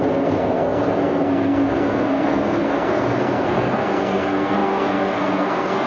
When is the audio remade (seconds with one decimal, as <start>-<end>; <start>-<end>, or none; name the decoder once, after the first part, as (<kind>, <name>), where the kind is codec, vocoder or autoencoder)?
0.0-5.9 (codec, SNAC)